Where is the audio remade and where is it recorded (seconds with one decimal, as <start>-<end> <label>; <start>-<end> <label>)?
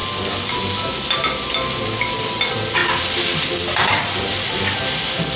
0.0-5.4 recorded